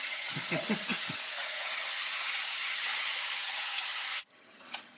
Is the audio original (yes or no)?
no